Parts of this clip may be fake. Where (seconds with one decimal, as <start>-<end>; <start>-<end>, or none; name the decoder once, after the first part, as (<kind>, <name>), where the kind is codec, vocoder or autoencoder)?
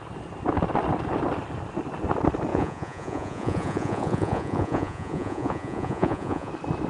2.5-6.5 (vocoder, Vocos)